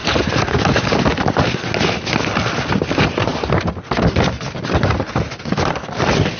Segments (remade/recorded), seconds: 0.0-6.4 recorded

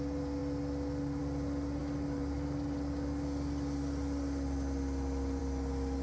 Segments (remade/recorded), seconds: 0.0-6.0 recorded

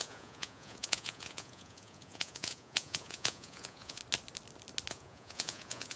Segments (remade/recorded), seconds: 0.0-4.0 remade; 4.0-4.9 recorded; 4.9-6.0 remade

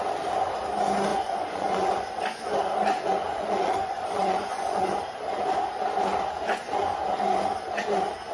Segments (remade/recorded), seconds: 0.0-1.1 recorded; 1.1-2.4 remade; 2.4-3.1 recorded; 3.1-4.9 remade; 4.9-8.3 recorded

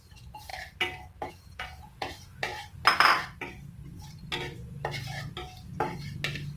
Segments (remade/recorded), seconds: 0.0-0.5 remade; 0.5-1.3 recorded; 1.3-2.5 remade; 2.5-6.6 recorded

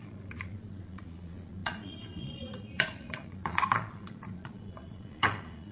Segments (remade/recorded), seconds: 0.0-5.7 remade